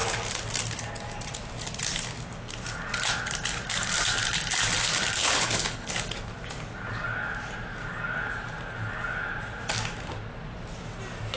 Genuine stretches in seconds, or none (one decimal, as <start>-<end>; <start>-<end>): 0.0-5.2; 5.9-11.4